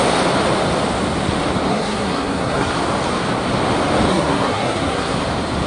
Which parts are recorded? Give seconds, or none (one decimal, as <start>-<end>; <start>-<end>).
0.0-1.7; 2.7-4.1; 5.2-5.7